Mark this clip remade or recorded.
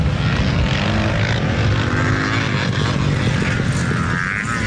recorded